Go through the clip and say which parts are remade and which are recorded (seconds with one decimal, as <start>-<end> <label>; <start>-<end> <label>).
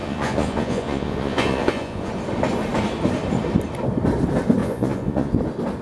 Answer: 0.0-2.1 remade; 2.1-4.6 recorded; 4.6-5.3 remade; 5.3-5.8 recorded